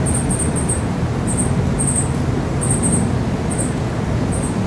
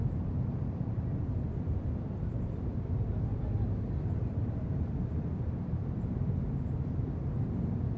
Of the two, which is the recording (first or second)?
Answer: first